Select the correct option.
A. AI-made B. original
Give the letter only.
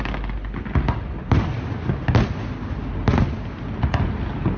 B